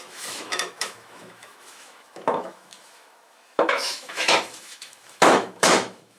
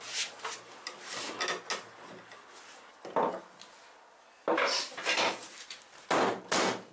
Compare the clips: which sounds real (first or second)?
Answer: second